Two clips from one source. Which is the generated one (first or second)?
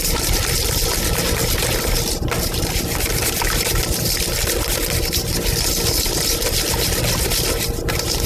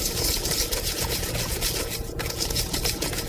second